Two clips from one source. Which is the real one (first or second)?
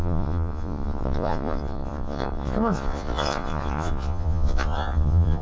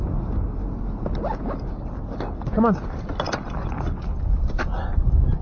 second